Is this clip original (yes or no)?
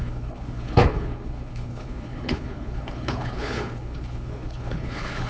no